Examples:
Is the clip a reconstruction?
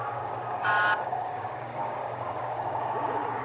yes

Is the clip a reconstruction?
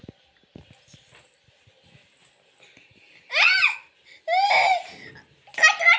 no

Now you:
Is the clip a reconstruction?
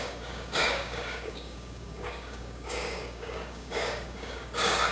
yes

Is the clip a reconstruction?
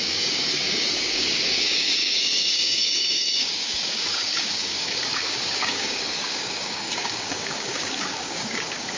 yes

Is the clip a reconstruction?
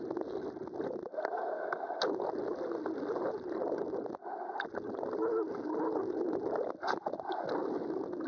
no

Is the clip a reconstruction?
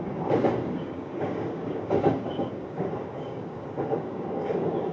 yes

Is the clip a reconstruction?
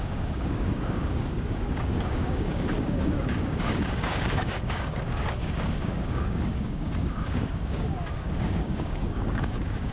yes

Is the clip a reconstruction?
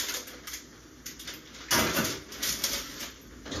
no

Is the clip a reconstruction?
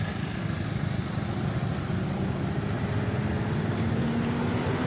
no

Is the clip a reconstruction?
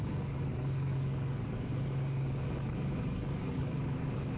yes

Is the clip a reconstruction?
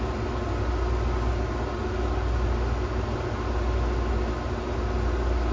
no